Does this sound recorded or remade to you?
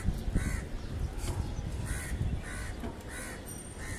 recorded